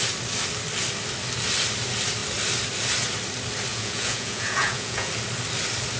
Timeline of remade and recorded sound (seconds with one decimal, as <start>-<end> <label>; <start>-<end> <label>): 0.0-3.7 recorded; 3.7-5.1 remade; 5.1-6.0 recorded